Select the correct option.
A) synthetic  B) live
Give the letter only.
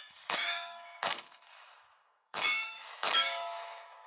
A